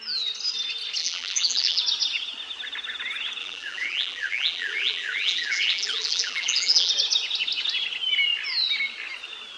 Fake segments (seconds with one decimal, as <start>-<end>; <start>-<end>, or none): 1.0-1.8; 3.4-6.9